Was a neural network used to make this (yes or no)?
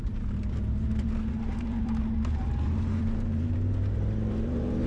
yes